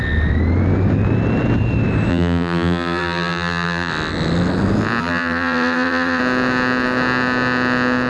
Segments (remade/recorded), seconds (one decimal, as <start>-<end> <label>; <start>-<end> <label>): 0.0-2.1 recorded; 2.1-3.9 remade; 3.9-5.0 recorded; 5.0-6.2 remade; 6.2-8.1 recorded